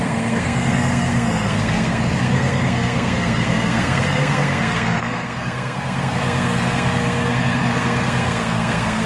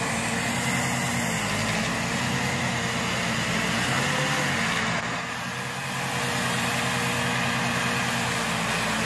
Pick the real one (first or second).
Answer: second